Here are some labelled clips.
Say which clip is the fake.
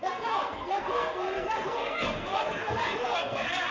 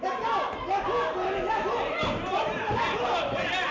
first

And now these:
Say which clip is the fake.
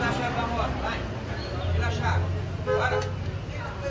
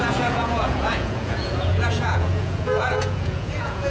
second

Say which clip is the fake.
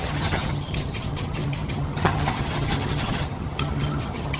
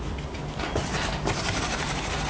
first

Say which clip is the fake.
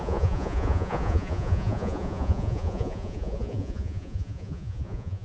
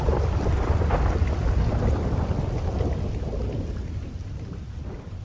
first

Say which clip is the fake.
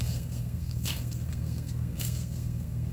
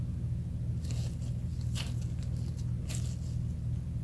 first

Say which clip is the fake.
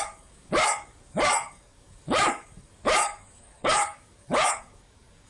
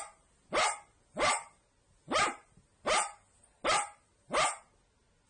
first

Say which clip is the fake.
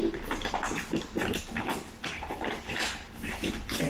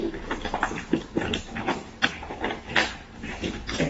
first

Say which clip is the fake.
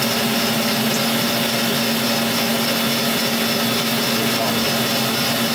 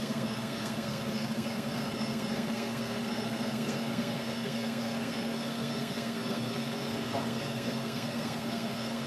second